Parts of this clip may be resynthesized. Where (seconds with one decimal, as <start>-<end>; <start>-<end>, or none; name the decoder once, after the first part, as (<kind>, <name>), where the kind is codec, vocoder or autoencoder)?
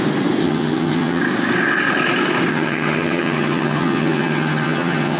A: 0.4-1.2 (vocoder, HiFi-GAN); 2.5-5.2